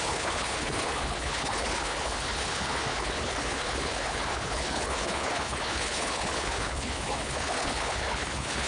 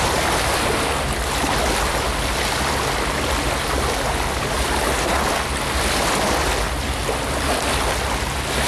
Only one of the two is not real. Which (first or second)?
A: first